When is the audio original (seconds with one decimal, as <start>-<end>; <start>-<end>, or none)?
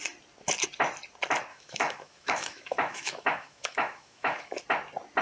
0.0-1.5; 4.6-5.2